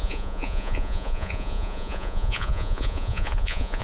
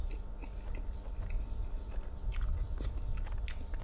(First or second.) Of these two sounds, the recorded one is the second